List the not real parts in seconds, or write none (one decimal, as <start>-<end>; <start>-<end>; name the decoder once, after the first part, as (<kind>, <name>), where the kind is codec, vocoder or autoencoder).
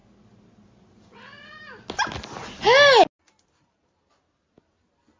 none